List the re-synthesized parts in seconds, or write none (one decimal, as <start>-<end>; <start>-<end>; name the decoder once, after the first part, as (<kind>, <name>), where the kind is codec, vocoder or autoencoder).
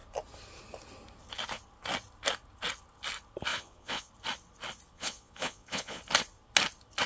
3.5-4.1 (vocoder, Vocos); 4.9-6.0